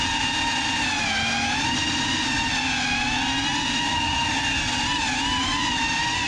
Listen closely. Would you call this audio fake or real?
real